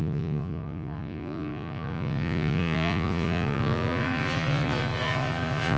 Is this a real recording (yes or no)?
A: no